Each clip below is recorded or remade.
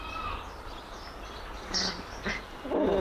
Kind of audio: recorded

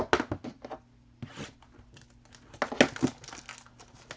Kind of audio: recorded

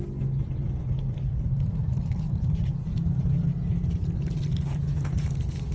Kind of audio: recorded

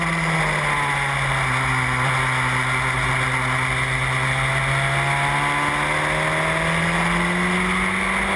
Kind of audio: recorded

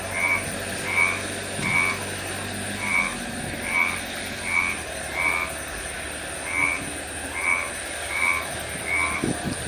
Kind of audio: recorded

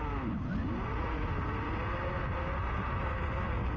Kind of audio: recorded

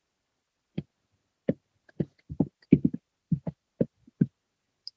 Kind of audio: recorded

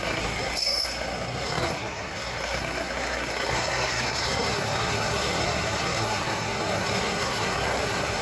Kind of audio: remade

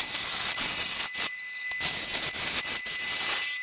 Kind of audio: recorded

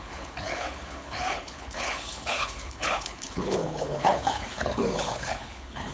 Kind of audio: remade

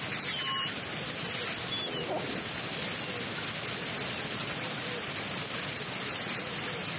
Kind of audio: recorded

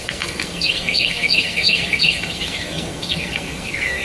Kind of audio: remade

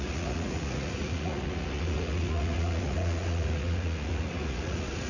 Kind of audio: remade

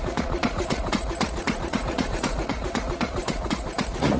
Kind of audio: remade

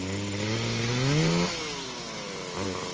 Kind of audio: recorded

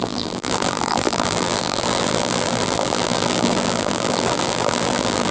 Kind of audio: remade